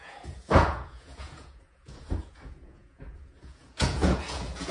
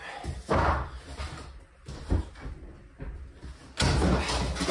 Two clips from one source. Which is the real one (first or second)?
second